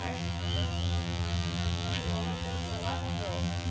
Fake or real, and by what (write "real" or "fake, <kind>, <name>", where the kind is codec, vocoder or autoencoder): fake, vocoder, BigVGAN v2